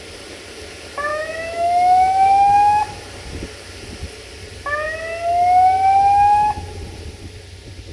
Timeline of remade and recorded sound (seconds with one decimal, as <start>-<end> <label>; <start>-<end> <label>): 0.0-1.1 recorded; 1.1-2.8 remade; 2.8-7.9 recorded

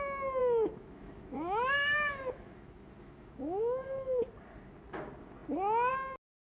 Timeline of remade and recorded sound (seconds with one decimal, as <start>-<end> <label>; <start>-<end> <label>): 0.0-0.4 recorded; 0.4-4.2 remade; 4.2-6.4 recorded

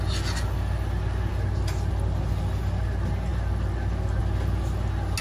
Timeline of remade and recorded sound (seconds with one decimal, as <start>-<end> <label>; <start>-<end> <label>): 0.0-5.2 recorded